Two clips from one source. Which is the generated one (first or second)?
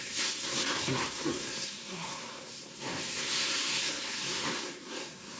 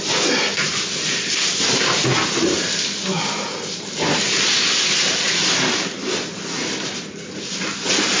first